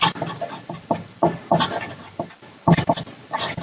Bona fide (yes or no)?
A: yes